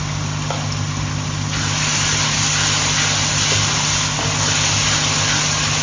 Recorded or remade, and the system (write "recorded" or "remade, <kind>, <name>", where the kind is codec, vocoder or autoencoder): recorded